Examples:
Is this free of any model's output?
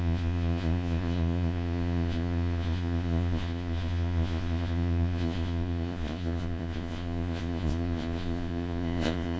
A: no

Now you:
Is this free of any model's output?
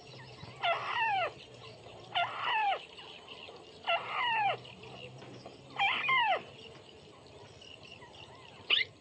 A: no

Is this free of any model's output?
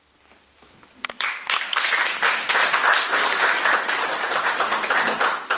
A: yes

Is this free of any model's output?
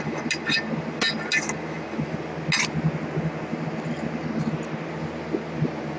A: yes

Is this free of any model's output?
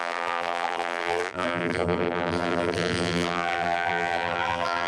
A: no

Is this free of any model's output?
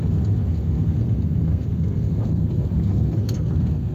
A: no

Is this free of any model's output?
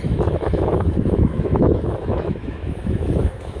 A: no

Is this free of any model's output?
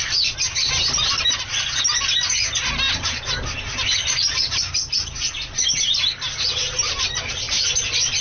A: yes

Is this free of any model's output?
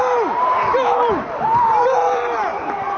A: no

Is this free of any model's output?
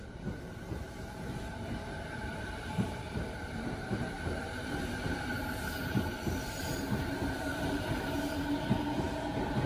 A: no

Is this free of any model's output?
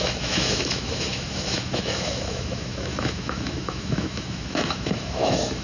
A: no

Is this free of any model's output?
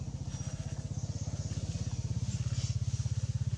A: yes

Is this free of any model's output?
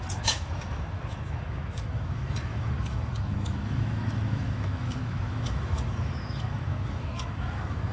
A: no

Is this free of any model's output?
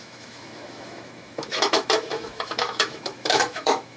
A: no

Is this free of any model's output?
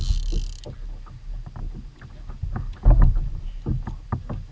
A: yes